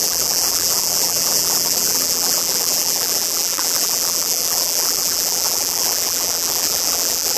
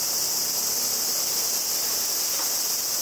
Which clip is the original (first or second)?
second